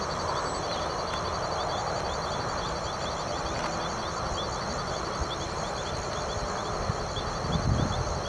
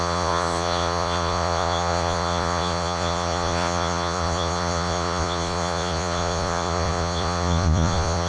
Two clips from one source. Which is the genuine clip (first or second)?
first